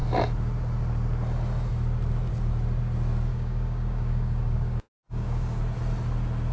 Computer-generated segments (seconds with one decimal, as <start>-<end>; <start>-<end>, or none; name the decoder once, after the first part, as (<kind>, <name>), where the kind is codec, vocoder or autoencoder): 3.3-5.6 (codec, DAC)